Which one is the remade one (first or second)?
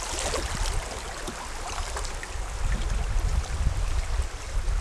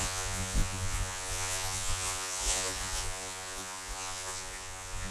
second